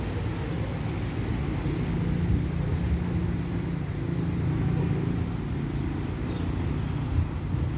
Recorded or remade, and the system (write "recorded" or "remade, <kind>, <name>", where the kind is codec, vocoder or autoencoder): recorded